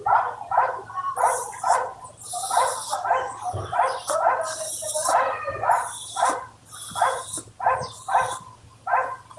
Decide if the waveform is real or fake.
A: real